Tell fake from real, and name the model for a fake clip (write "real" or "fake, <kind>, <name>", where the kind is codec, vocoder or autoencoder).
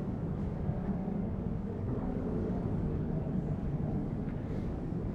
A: fake, codec, DAC